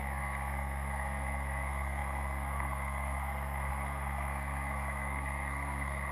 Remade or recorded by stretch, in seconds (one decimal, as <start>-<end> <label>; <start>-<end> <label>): 0.0-6.1 remade